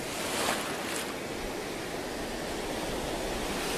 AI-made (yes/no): no